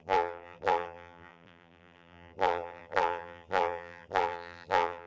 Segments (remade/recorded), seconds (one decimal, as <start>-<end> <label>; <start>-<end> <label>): 0.0-5.1 remade